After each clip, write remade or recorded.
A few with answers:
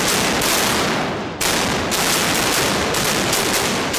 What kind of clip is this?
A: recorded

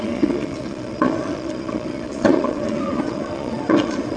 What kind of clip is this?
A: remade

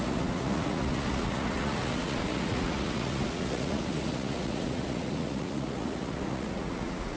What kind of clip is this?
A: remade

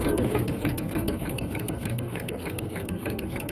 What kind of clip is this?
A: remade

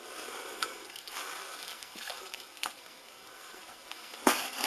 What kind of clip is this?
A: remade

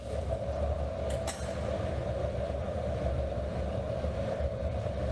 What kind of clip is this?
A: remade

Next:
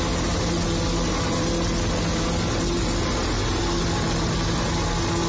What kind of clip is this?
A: recorded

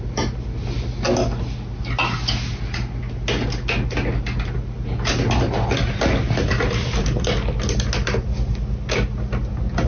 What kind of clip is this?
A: recorded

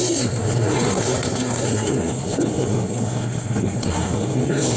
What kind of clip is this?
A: remade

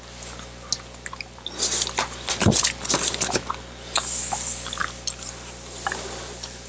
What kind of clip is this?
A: recorded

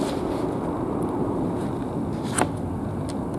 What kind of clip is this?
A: recorded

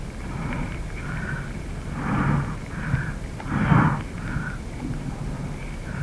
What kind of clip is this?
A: recorded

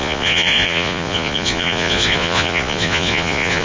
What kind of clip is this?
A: remade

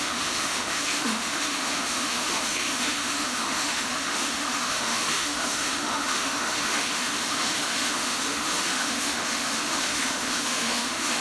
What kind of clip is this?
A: remade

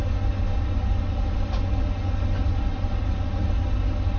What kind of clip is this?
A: recorded